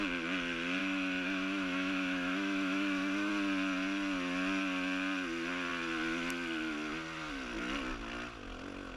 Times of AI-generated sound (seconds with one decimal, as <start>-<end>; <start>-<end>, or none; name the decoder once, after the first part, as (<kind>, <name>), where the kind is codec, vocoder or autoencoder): 0.8-3.3 (autoencoder, DAC-VAE)